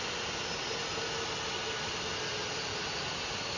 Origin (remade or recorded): recorded